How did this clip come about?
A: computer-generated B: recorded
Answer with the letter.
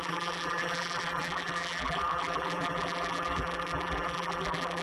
A